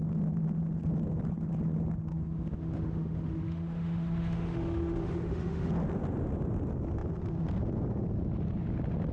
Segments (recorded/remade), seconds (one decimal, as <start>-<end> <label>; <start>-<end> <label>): 0.0-2.1 recorded; 2.1-5.7 remade; 5.7-9.1 recorded